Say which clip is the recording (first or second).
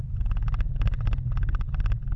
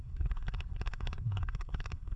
first